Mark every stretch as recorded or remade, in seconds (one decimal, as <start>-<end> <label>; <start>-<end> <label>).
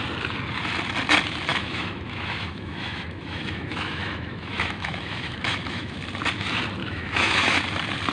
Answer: 0.0-1.5 recorded; 1.5-6.0 remade; 6.0-6.8 recorded; 6.8-7.6 remade; 7.6-8.1 recorded